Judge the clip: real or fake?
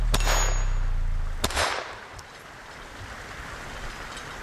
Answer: real